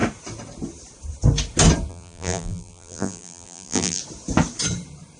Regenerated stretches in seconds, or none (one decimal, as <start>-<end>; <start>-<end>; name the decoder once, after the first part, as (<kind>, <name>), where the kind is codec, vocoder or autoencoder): 1.9-4.0 (vocoder, BigVGAN v2)